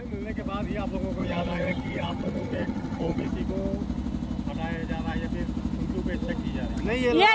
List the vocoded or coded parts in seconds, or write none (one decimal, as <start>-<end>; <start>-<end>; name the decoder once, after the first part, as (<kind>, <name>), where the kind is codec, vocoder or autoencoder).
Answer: 1.2-3.3 (vocoder, HiFi-GAN)